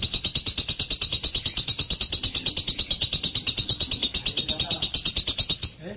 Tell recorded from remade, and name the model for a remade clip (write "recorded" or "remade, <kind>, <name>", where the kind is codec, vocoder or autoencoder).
recorded